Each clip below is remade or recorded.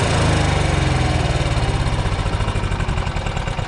recorded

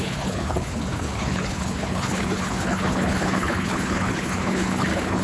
remade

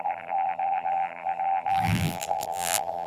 remade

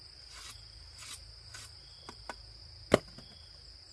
recorded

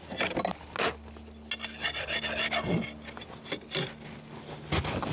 recorded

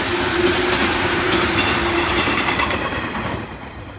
remade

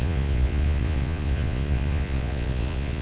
remade